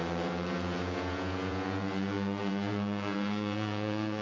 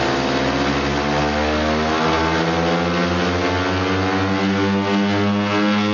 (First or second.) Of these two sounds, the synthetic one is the first